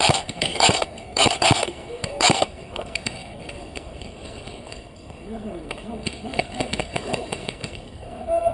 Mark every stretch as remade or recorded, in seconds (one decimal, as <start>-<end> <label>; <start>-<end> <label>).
0.0-8.5 remade